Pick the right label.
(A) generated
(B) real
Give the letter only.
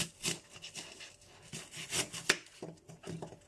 B